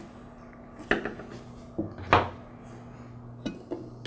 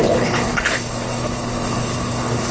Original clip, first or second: first